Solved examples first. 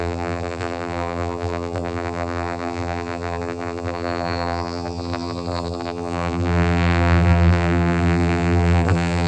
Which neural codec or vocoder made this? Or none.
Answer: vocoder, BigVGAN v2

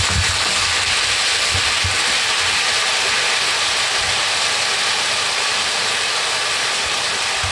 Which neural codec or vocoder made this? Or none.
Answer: none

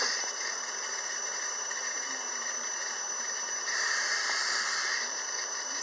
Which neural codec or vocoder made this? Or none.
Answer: vocoder, BigVGAN v2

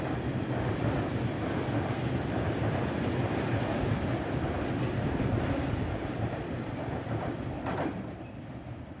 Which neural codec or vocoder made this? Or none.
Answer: vocoder, BigVGAN v2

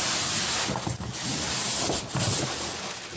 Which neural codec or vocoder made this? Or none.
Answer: none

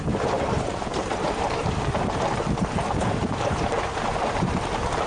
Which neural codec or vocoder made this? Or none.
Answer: vocoder, BigVGAN v2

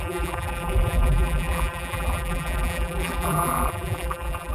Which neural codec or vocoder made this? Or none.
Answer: vocoder, BigVGAN v2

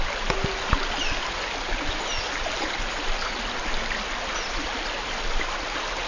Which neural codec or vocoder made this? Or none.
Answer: vocoder, BigVGAN v2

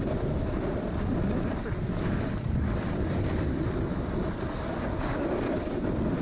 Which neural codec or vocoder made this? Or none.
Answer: vocoder, BigVGAN v2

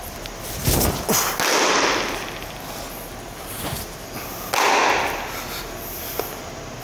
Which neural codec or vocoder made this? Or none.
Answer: none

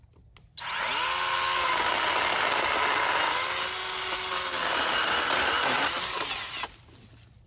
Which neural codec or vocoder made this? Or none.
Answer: none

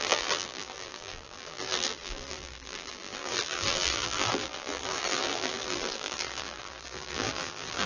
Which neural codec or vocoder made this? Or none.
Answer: vocoder, BigVGAN v2